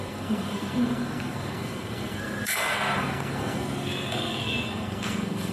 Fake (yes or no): yes